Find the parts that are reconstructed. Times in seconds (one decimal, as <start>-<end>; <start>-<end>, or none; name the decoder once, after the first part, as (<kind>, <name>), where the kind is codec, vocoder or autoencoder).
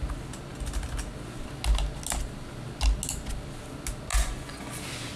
4.1-4.8 (vocoder, Vocos)